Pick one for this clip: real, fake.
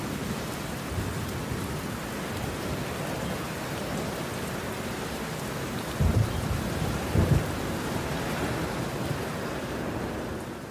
real